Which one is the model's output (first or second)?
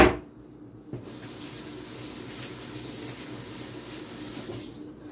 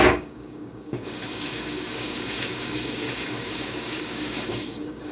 second